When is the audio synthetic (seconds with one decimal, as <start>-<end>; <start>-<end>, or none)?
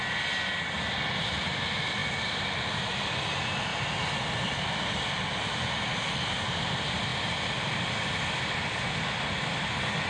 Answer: none